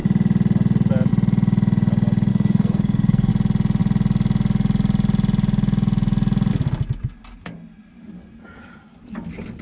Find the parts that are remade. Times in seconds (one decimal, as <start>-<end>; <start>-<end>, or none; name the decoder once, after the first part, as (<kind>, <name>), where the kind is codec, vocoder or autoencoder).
2.3-3.3 (codec, SNAC)